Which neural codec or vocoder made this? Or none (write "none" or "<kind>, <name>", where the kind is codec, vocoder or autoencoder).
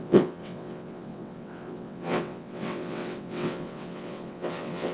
vocoder, WaveNeXt